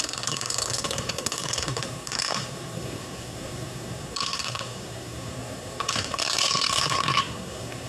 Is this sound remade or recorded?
remade